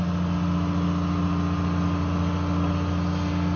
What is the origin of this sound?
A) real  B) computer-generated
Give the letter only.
A